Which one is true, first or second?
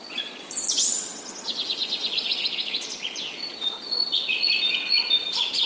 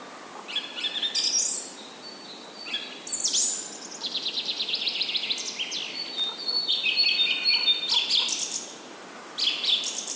second